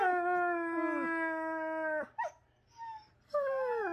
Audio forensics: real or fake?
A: real